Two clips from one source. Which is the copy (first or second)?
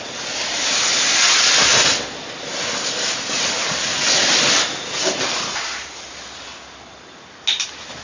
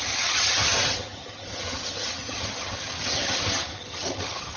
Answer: second